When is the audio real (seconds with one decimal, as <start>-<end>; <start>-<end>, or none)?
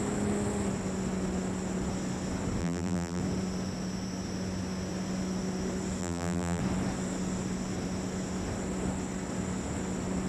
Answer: 0.0-2.6; 3.2-6.0; 6.6-10.3